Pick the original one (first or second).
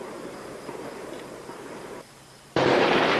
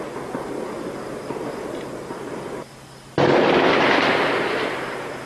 second